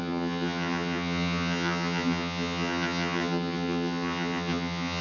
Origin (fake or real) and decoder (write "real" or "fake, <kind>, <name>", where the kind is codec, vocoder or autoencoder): fake, vocoder, HiFi-GAN